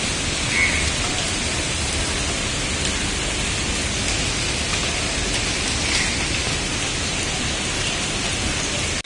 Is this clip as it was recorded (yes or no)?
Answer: yes